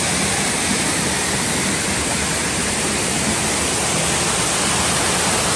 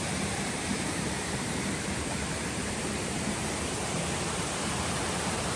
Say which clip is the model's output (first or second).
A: second